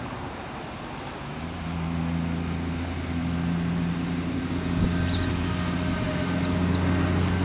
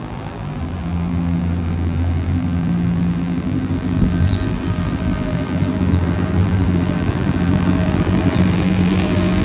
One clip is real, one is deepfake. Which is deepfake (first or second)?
second